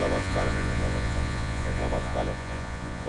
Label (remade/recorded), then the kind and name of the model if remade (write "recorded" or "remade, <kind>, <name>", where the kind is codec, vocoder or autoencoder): remade, vocoder, Vocos